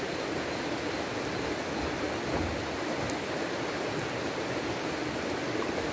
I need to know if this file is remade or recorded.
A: recorded